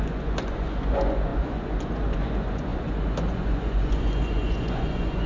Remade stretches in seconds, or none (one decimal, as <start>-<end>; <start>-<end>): 0.0-5.3